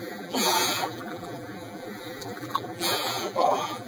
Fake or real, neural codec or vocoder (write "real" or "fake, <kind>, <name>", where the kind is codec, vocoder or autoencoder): fake, vocoder, BigVGAN v2